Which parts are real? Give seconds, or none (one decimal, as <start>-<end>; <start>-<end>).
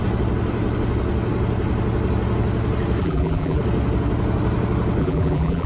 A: 0.0-3.0; 3.6-5.0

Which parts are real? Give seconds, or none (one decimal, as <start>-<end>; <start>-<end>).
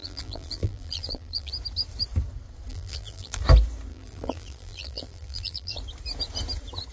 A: 1.5-2.7; 3.4-3.9; 5.8-6.9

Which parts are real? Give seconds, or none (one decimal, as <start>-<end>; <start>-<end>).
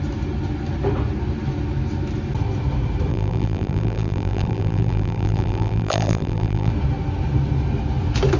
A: 0.0-3.1; 6.7-8.4